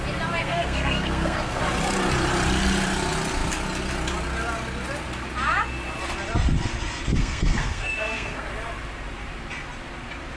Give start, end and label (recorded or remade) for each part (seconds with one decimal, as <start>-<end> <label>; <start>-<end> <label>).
0.0-0.4 recorded; 0.4-1.6 remade; 1.6-7.1 recorded; 7.1-8.5 remade; 8.5-10.4 recorded